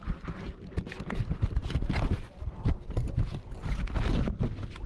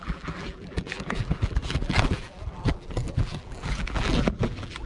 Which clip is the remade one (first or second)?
second